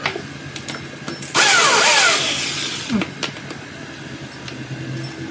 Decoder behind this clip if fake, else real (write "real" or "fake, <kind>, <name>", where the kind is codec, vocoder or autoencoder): real